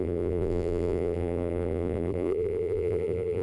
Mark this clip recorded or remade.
remade